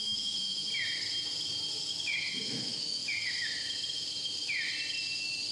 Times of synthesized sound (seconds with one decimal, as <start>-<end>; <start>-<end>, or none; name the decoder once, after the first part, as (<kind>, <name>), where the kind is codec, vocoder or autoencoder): 0.0-0.7 (autoencoder, DAC-VAE); 2.3-3.0